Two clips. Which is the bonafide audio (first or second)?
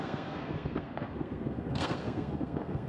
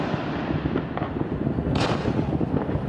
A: second